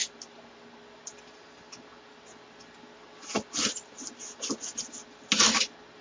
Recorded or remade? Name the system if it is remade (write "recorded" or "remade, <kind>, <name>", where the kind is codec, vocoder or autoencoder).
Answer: recorded